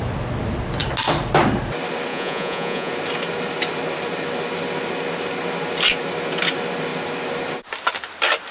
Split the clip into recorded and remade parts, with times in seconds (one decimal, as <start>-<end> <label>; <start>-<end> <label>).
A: 0.0-2.1 recorded; 2.1-2.9 remade; 2.9-8.5 recorded